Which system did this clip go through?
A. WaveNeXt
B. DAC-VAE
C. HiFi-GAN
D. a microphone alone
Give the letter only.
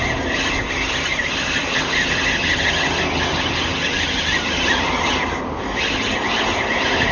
D